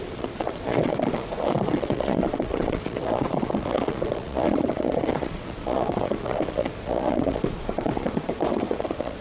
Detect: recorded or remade remade